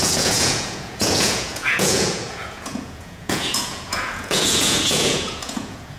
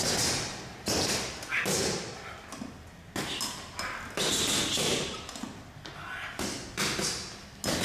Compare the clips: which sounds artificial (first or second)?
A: first